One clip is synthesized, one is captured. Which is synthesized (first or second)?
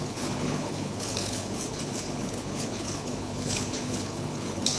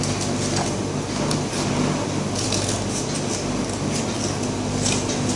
first